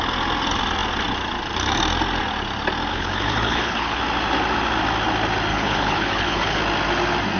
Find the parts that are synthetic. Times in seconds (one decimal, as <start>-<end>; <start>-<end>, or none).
2.9-4.0; 5.5-6.6